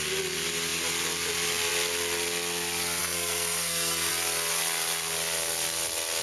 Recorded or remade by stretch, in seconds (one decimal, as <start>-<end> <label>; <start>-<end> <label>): 0.0-3.0 recorded; 3.0-4.1 remade; 4.1-6.2 recorded